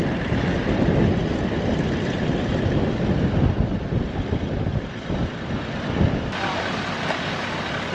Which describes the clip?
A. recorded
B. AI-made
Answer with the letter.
B